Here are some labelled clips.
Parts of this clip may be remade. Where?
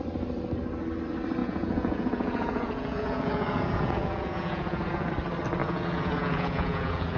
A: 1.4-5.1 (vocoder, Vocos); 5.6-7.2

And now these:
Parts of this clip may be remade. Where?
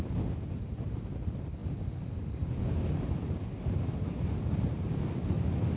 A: none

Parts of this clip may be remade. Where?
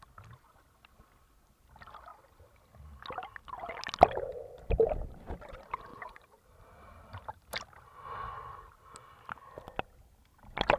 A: 5.9-8.3 (vocoder, BigVGAN v2)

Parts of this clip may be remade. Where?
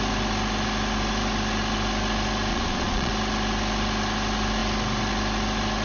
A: 2.5-3.1 (vocoder, Vocos)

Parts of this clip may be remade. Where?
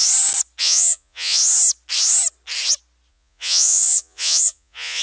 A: 0.6-1.4 (vocoder, Vocos); 3.1-5.0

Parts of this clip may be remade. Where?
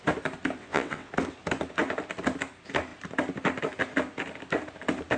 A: 0.6-1.1 (vocoder, WaveNeXt)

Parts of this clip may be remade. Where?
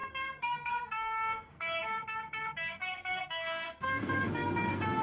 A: 0.0-1.8 (codec, SNAC); 2.8-5.0